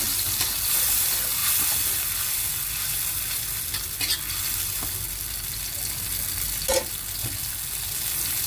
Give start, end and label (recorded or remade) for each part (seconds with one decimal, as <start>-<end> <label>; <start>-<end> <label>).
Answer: 0.0-8.5 recorded